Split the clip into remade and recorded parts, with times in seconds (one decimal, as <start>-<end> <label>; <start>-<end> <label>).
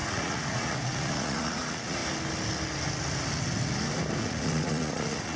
0.0-2.0 remade; 2.0-4.2 recorded; 4.2-5.4 remade